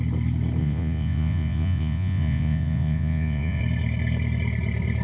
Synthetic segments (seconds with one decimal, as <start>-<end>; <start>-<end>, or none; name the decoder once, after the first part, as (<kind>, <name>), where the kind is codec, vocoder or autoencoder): 0.6-3.6 (vocoder, Vocos)